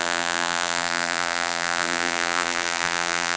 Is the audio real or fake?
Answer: fake